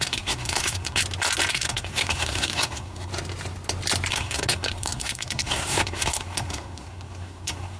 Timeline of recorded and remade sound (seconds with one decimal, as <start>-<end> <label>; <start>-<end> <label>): 0.0-1.0 remade; 1.0-1.5 recorded; 1.5-3.1 remade; 3.1-4.1 recorded; 4.1-7.8 remade